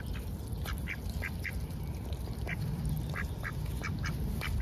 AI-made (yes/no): no